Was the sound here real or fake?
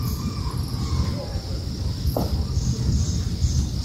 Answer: real